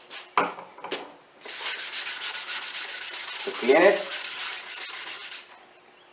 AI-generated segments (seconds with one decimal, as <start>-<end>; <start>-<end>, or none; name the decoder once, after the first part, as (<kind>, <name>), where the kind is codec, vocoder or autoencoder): none